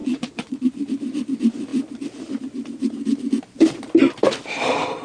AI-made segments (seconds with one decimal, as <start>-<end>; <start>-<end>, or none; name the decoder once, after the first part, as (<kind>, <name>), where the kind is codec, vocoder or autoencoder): 0.0-0.7 (vocoder, Vocos)